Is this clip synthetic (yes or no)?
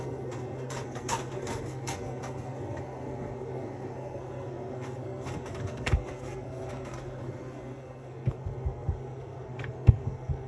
yes